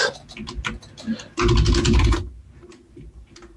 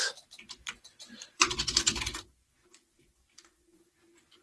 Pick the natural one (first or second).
first